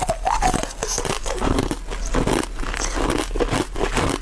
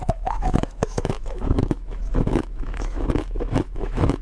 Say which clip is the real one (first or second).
first